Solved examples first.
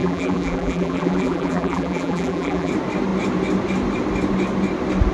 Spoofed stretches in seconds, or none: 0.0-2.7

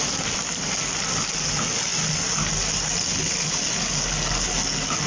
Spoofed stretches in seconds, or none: none